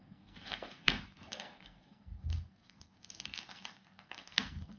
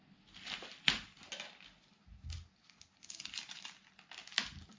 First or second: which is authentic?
second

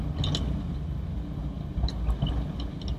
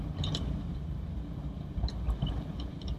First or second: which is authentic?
first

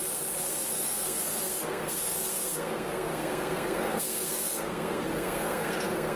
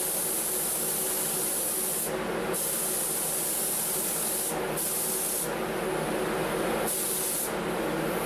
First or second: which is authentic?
second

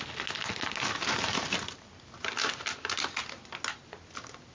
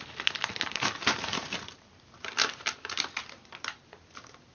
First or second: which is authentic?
first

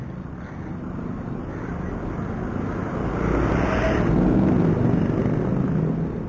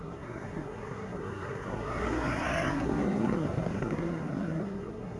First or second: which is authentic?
first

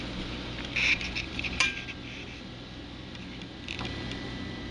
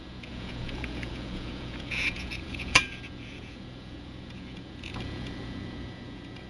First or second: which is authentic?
first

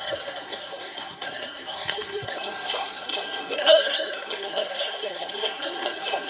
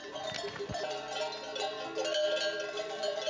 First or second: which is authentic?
second